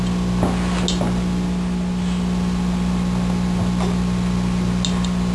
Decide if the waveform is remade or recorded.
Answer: recorded